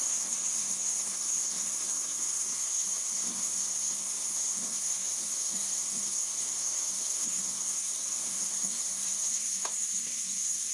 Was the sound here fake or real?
fake